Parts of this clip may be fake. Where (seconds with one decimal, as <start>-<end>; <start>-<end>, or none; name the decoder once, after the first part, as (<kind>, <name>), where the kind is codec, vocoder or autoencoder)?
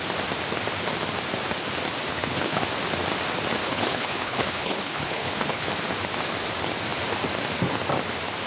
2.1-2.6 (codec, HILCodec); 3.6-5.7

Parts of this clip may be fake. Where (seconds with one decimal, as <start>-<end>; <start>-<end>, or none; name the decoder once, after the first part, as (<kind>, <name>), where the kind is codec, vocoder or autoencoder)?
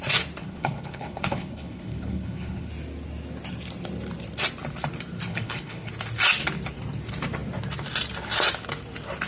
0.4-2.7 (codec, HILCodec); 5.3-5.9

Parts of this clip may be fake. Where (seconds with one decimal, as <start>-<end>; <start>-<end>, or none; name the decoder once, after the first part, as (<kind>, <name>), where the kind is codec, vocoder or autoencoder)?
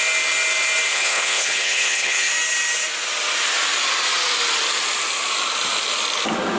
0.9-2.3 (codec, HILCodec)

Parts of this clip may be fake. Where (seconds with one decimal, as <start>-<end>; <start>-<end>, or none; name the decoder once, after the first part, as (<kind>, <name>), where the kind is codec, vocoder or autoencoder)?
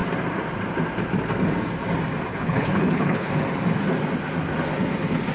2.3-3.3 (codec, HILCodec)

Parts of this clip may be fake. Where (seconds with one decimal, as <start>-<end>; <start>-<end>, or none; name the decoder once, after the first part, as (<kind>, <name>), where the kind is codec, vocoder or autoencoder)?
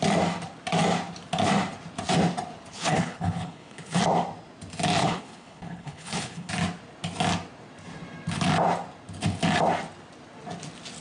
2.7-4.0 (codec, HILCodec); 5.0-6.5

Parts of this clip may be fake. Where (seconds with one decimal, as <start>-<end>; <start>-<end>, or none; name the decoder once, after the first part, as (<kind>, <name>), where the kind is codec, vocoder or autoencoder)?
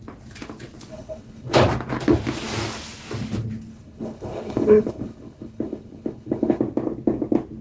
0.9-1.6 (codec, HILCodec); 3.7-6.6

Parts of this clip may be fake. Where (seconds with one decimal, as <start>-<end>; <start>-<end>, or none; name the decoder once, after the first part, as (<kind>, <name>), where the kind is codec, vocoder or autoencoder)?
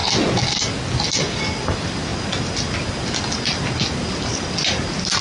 none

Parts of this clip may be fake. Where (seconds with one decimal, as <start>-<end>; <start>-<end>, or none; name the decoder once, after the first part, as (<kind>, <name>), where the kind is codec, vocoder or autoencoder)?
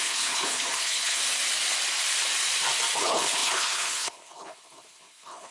0.0-1.2 (codec, HILCodec); 3.0-5.5